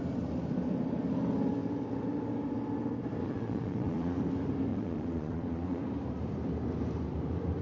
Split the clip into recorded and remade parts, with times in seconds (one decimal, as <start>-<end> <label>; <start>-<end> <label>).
0.0-3.2 recorded; 3.2-4.2 remade; 4.2-4.7 recorded; 4.7-5.8 remade; 5.8-7.6 recorded